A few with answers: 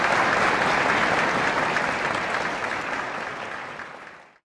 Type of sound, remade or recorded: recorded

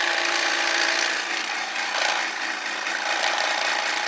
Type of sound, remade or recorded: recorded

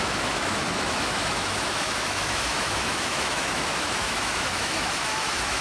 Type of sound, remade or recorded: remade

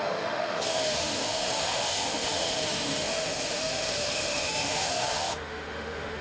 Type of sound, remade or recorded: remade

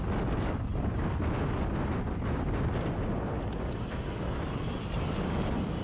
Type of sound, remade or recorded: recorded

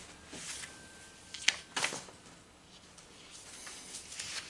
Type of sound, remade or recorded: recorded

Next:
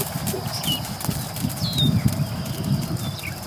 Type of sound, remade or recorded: recorded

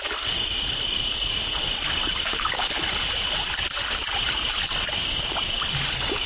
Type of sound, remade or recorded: recorded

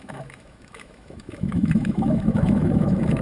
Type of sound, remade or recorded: remade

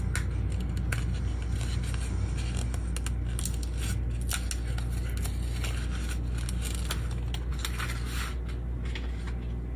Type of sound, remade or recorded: recorded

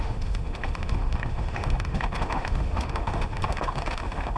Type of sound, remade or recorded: remade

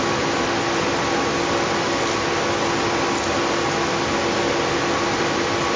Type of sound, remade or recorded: recorded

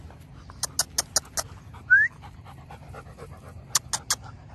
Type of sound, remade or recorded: recorded